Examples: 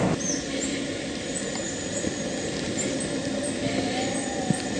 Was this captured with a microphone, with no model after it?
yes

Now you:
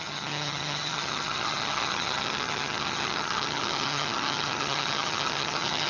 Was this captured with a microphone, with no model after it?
no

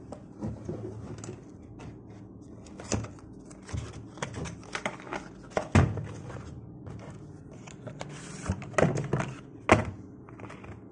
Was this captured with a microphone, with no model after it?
yes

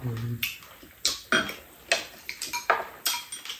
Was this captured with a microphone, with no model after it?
yes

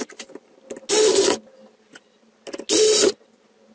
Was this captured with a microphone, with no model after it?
yes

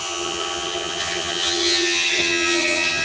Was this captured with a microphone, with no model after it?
no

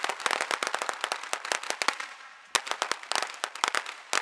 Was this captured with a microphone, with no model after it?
yes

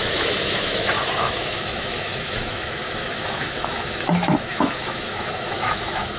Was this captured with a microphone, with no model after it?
no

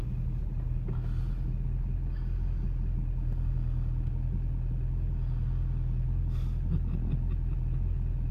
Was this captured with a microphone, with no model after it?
yes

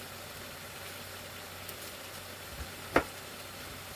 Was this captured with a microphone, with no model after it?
yes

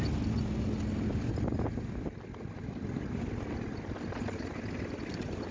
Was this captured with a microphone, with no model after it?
yes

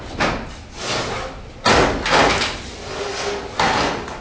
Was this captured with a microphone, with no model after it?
yes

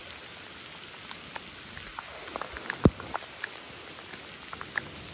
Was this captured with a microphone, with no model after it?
yes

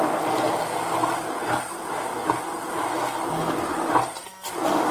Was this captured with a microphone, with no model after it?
yes